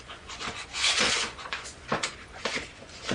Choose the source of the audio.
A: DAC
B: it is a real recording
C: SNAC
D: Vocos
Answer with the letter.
D